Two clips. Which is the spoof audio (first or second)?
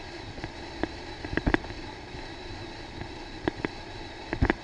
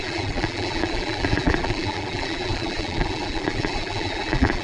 second